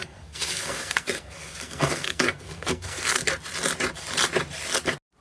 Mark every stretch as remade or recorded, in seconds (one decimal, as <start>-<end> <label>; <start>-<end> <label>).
0.0-3.2 remade; 3.2-5.2 recorded